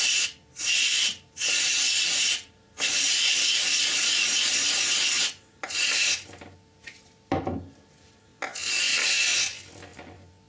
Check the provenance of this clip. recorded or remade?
recorded